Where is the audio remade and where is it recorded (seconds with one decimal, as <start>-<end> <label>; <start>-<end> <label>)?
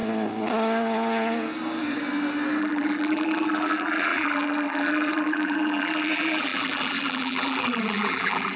0.0-2.6 recorded; 2.6-8.6 remade